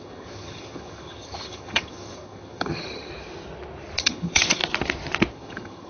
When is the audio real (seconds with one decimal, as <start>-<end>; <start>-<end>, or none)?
3.1-4.0; 4.6-5.3

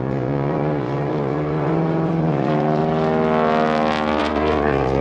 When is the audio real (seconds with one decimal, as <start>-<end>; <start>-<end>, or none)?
2.8-4.2

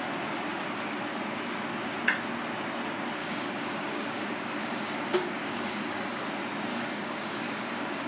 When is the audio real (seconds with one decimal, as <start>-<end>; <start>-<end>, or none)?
0.0-3.2; 6.3-6.7

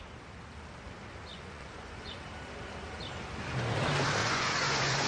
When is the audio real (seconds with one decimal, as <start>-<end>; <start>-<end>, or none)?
0.0-1.3; 2.2-4.2

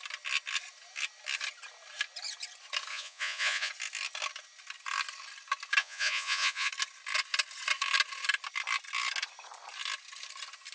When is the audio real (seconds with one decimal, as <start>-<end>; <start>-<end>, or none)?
0.0-2.9; 3.7-5.8; 6.7-10.7

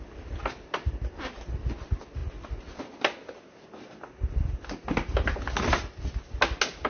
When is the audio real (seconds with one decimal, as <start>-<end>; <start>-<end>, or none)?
0.0-6.9

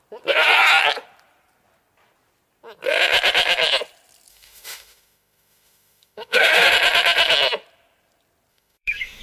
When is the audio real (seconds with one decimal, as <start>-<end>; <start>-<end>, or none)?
0.0-4.3; 6.7-8.5

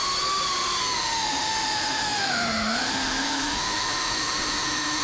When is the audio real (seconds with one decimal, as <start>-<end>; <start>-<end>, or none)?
0.0-0.8